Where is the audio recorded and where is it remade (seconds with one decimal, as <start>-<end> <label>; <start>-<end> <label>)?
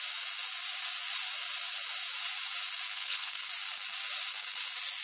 0.0-2.9 recorded; 2.9-3.5 remade; 3.5-5.0 recorded